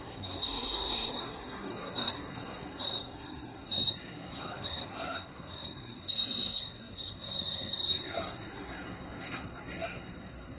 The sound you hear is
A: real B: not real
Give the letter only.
B